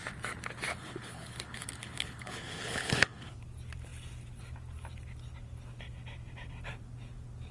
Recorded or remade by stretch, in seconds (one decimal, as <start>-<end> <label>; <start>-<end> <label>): 0.0-0.7 recorded; 0.7-3.4 remade; 3.4-7.5 recorded